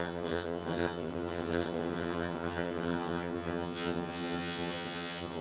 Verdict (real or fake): fake